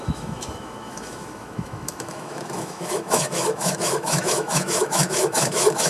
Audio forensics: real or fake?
fake